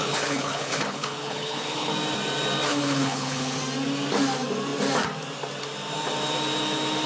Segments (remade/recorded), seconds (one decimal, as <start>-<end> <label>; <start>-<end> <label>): 0.0-1.9 remade; 1.9-2.7 recorded; 2.7-3.6 remade; 3.6-7.1 recorded